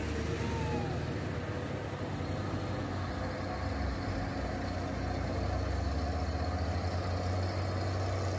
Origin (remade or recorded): recorded